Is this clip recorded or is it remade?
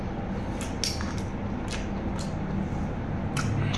recorded